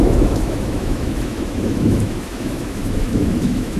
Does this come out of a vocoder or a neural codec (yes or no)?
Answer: yes